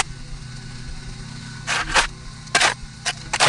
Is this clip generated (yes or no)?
no